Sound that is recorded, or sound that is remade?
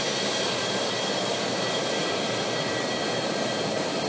remade